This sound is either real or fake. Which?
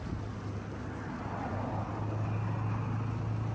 real